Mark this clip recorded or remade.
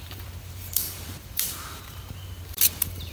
remade